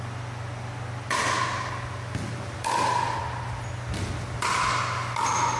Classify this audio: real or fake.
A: real